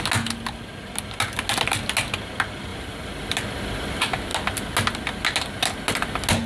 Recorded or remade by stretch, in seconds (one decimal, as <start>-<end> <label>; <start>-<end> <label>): 0.0-2.7 recorded; 2.7-3.3 remade; 3.3-6.5 recorded